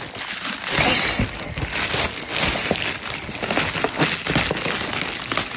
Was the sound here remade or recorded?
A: recorded